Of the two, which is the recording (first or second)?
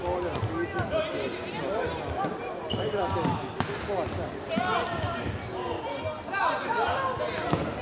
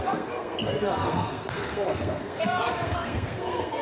first